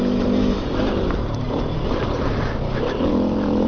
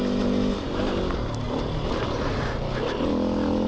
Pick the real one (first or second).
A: second